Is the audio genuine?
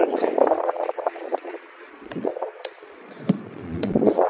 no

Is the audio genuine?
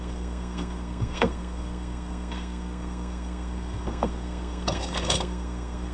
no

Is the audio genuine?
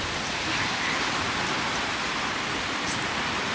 yes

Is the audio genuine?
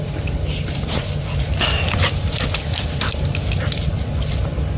yes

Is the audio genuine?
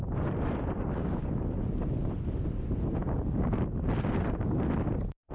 yes